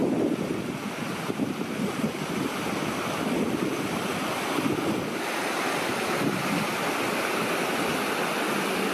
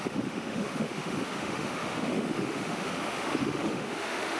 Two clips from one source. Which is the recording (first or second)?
first